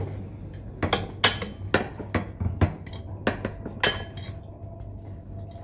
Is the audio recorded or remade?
recorded